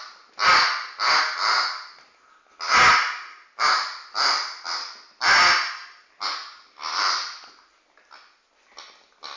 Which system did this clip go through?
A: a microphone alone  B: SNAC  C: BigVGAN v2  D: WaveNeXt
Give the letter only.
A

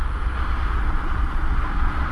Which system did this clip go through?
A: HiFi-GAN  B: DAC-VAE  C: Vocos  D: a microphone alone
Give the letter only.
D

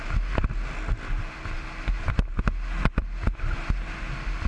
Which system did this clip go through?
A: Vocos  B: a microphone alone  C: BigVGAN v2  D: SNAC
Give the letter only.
B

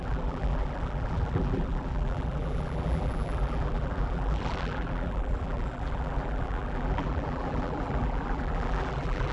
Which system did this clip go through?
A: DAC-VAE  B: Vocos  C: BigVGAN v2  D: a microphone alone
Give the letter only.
C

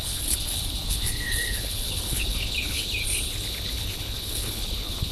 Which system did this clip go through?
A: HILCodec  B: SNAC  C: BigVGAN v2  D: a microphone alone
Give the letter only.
A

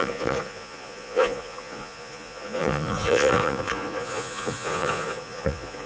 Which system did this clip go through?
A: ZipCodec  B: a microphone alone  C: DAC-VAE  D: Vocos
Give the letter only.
D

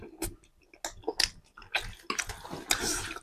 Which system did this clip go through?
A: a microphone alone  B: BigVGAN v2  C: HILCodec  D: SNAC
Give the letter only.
A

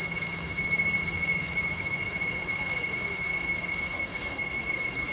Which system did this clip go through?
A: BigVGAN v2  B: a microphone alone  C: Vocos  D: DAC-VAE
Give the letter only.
D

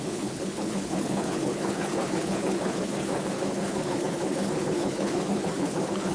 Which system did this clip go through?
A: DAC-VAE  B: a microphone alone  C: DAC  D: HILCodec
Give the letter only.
D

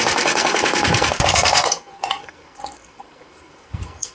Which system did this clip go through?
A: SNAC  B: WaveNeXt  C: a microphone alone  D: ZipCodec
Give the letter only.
A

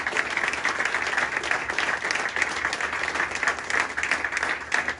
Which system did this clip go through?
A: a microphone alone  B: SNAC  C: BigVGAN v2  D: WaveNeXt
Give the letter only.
A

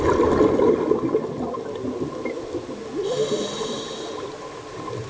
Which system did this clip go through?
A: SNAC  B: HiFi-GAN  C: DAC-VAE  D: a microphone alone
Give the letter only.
D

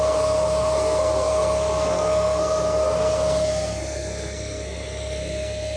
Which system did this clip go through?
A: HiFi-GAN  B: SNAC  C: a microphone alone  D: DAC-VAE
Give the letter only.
B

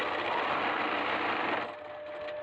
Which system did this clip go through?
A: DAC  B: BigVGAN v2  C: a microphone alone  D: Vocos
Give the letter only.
C